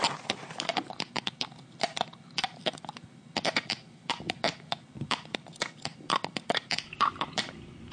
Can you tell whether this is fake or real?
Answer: fake